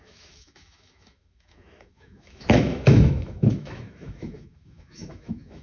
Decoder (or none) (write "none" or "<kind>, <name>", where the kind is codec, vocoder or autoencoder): autoencoder, DAC-VAE